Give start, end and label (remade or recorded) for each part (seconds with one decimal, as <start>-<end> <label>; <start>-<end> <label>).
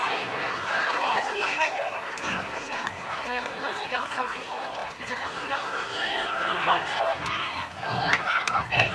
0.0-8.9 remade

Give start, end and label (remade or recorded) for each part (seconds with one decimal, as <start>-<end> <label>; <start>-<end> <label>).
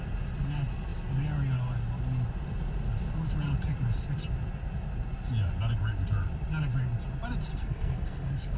0.0-7.5 recorded; 7.5-8.6 remade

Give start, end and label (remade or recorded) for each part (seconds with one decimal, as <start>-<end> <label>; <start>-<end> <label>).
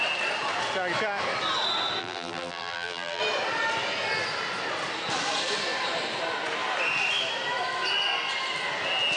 0.0-2.0 recorded; 2.0-3.2 remade; 3.2-9.2 recorded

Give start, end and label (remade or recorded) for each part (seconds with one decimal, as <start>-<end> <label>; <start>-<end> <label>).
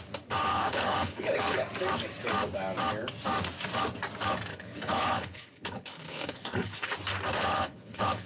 0.0-0.5 recorded; 0.5-1.6 remade; 1.6-4.5 recorded; 4.5-6.9 remade; 6.9-7.4 recorded; 7.4-8.3 remade